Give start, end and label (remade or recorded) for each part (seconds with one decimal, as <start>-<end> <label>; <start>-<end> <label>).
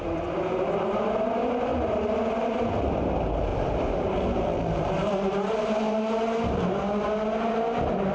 0.0-3.5 recorded; 3.5-6.8 remade; 6.8-8.1 recorded